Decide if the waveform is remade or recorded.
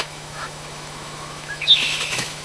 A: remade